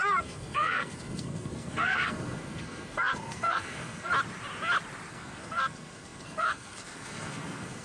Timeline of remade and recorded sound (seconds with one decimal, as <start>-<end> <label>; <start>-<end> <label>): 0.0-4.1 remade; 4.1-5.1 recorded; 5.1-7.8 remade